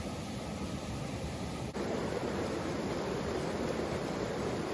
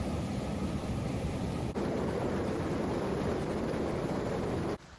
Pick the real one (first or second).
second